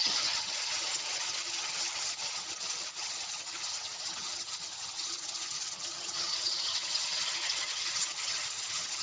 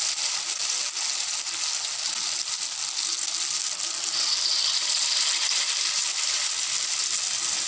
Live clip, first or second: second